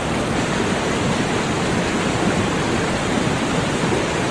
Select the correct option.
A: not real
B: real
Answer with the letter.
B